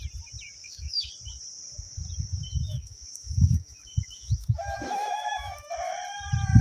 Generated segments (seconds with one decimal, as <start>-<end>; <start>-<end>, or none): 0.6-1.1; 2.5-5.7